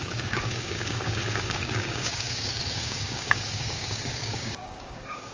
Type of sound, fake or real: fake